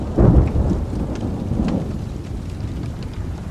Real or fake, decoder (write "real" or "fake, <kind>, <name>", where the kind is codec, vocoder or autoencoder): real